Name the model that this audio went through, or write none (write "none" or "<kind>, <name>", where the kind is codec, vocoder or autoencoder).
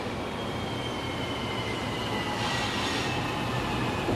none